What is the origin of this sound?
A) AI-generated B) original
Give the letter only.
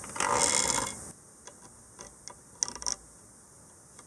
B